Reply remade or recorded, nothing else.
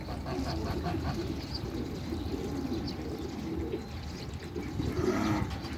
recorded